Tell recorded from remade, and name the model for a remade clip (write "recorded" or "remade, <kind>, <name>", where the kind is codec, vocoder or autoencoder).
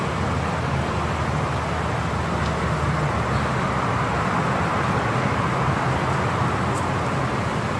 recorded